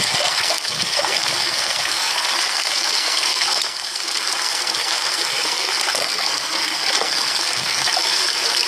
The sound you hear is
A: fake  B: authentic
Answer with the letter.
A